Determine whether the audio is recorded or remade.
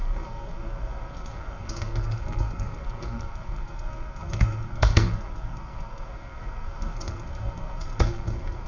remade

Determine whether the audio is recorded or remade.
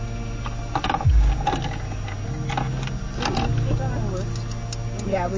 recorded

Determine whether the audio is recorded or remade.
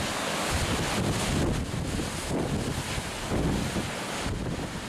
recorded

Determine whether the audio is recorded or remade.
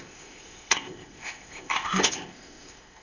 remade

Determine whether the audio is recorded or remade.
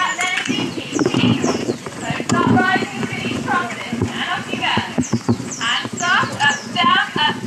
remade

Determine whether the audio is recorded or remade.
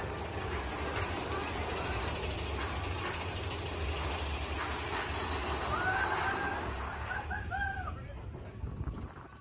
recorded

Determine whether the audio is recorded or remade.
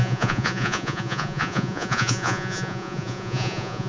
remade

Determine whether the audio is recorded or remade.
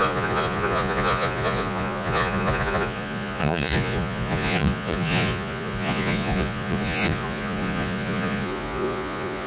remade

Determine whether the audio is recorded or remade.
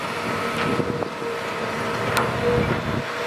recorded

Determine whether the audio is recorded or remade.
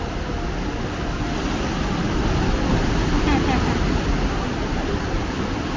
recorded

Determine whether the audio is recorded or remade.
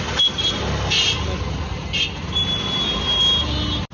recorded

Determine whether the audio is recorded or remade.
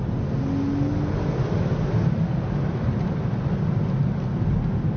recorded